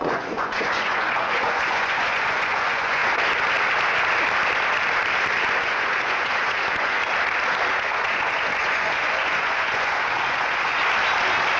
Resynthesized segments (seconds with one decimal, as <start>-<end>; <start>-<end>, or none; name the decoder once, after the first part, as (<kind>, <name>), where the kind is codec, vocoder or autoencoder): 0.0-3.0 (vocoder, Vocos); 5.6-7.0; 7.7-10.8